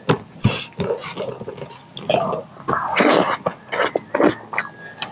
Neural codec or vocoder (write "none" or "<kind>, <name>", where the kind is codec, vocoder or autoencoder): none